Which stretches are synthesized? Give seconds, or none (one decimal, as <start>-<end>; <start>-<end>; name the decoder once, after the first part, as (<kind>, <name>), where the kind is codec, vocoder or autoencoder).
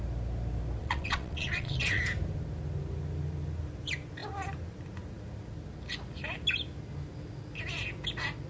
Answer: 0.8-2.0 (vocoder, WaveNeXt)